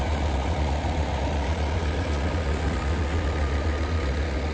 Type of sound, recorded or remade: remade